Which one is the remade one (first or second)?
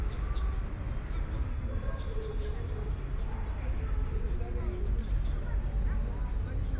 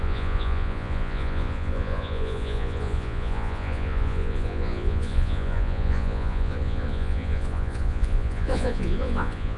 second